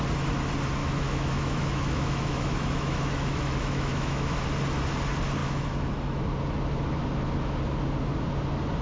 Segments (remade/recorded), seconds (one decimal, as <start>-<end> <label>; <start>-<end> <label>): 0.0-0.8 recorded; 0.8-4.4 remade; 4.4-5.4 recorded; 5.4-6.2 remade; 6.2-8.8 recorded